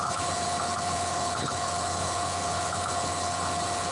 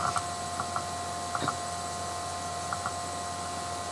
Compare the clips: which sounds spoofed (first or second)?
first